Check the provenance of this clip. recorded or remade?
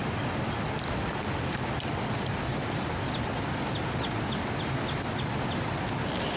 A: recorded